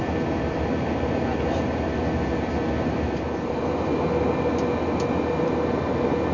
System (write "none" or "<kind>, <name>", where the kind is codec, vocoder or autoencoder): none